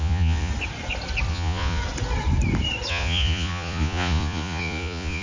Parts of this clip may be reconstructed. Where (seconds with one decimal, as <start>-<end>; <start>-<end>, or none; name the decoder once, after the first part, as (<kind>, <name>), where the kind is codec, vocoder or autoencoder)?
0.0-0.5 (vocoder, Vocos); 1.3-1.8; 2.9-5.2

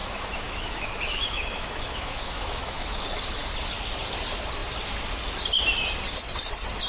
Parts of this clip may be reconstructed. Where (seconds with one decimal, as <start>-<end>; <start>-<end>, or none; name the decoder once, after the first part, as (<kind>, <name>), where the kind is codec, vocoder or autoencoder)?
0.0-3.0 (autoencoder, DAC-VAE)

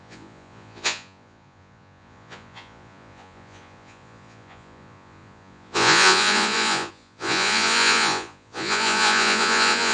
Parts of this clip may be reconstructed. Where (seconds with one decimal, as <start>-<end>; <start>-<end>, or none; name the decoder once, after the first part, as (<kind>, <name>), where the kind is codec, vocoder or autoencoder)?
0.0-9.9 (vocoder, Vocos)